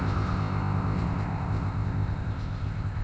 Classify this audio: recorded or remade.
remade